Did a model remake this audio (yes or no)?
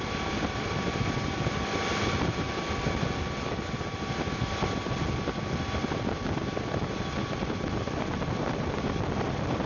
no